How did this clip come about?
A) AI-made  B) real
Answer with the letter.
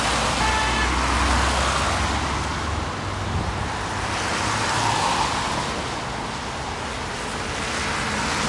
B